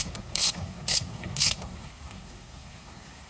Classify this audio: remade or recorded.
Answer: remade